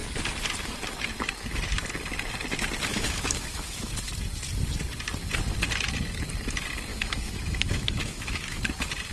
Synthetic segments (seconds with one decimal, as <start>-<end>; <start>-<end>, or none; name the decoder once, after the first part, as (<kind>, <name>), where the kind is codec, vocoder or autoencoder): 2.9-3.9 (autoencoder, DAC-VAE); 6.9-8.6